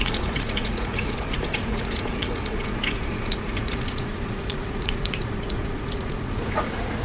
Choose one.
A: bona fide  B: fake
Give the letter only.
B